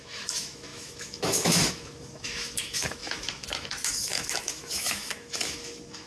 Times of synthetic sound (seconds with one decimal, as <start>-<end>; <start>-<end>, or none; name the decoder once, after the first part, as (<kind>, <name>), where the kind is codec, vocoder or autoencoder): 0.0-6.1 (autoencoder, DAC-VAE)